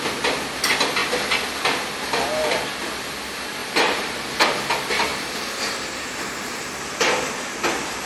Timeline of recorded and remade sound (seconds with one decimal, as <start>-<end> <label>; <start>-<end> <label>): 0.0-3.6 recorded; 3.6-4.5 remade; 4.5-5.1 recorded; 5.1-8.1 remade